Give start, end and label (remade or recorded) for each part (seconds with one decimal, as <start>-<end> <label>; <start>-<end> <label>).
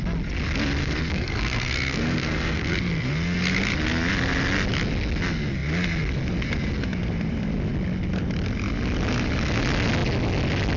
0.0-0.8 recorded; 0.8-2.8 remade; 2.8-10.8 recorded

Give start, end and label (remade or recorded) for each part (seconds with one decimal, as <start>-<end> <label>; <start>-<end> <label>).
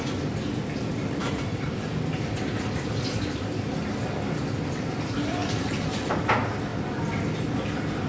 0.0-1.0 recorded; 1.0-1.7 remade; 1.7-5.4 recorded; 5.4-6.1 remade; 6.1-8.1 recorded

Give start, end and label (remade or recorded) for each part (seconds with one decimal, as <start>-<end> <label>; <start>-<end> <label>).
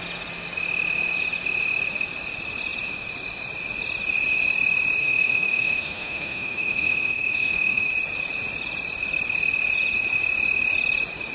0.0-5.0 recorded; 5.0-7.9 remade; 7.9-11.3 recorded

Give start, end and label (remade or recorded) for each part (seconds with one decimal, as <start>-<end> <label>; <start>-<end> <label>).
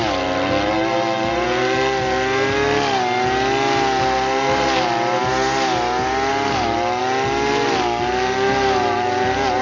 0.0-9.6 recorded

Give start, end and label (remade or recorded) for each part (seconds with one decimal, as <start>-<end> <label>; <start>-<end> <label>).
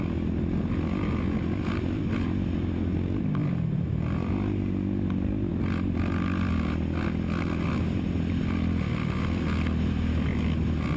0.0-11.0 recorded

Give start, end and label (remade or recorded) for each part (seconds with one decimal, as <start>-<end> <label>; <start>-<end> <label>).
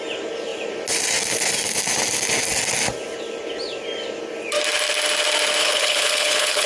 0.0-5.6 recorded; 5.6-6.7 remade